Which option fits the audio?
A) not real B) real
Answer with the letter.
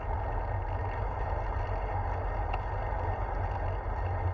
B